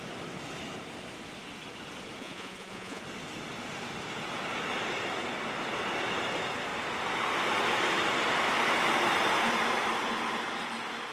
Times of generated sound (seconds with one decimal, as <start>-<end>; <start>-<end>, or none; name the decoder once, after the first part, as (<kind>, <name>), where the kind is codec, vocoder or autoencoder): 2.2-3.0 (vocoder, Vocos)